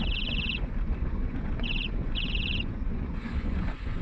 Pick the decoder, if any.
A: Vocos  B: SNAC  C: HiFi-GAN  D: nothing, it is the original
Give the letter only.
A